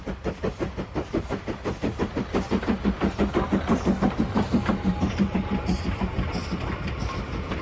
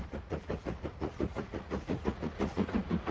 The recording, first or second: first